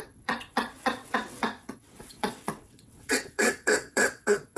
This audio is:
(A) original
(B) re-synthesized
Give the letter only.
B